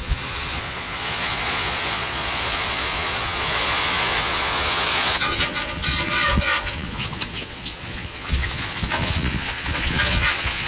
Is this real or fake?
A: fake